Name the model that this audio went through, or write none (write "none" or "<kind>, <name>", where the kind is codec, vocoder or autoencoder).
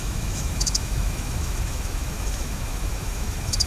autoencoder, DAC-VAE